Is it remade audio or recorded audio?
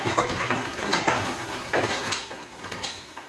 remade